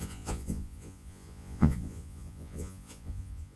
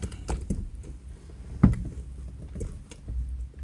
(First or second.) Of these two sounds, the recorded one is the second